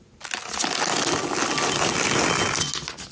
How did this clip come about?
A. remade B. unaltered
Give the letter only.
B